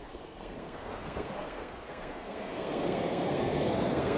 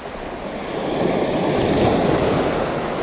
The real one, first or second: second